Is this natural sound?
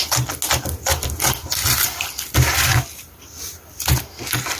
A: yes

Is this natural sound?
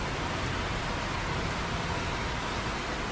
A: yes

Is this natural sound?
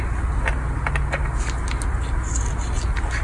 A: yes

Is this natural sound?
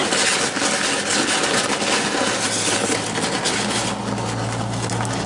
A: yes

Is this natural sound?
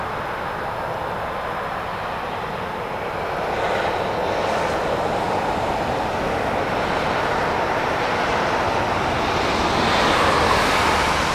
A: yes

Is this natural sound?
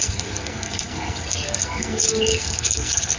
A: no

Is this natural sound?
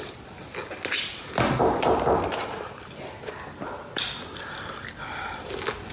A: yes